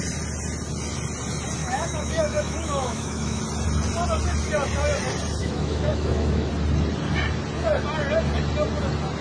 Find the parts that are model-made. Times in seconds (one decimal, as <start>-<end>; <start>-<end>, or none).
1.6-3.4; 5.4-6.5